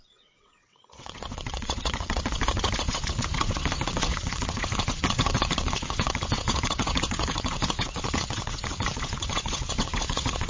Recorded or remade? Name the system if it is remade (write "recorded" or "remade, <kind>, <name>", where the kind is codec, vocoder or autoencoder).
remade, vocoder, WaveNeXt